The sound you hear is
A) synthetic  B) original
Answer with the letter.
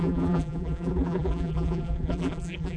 A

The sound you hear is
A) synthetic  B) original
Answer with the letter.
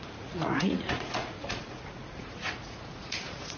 A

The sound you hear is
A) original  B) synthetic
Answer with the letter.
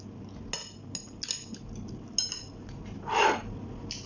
A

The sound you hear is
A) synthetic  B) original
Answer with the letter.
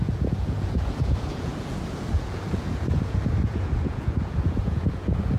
A